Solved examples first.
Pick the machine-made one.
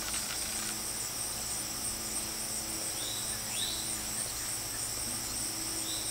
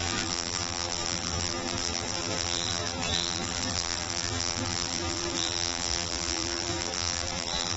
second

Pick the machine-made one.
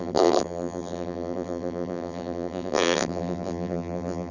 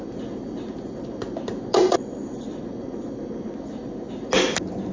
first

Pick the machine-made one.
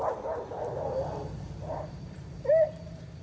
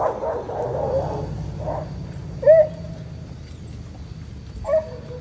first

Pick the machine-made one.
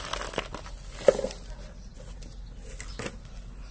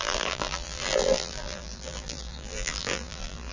second